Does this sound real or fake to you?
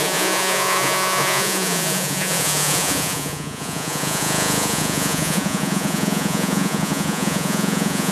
fake